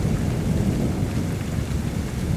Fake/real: real